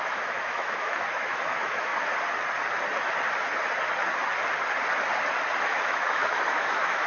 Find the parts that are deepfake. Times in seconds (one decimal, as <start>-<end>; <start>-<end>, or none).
0.0-1.9; 5.6-7.1